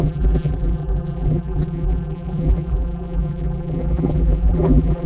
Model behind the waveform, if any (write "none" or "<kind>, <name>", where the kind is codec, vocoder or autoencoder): vocoder, BigVGAN v2